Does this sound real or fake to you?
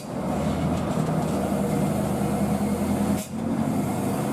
real